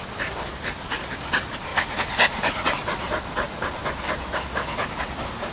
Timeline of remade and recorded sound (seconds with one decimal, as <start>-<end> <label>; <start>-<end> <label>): 0.0-5.5 recorded

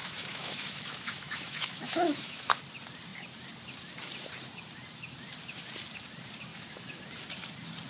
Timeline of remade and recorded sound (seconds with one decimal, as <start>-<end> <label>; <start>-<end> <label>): 0.0-2.6 remade; 2.6-6.5 recorded; 6.5-7.0 remade; 7.0-7.9 recorded